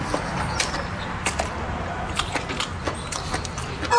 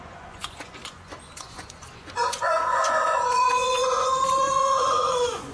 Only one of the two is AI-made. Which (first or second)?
second